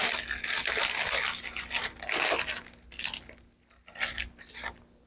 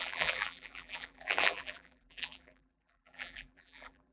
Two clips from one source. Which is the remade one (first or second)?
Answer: second